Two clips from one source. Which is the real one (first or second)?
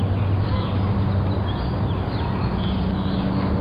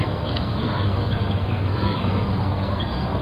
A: first